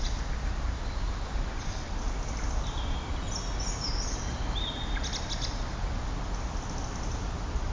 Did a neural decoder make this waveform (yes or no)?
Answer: no